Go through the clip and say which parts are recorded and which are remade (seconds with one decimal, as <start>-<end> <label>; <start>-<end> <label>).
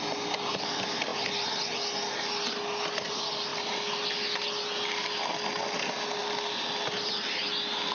0.0-7.9 recorded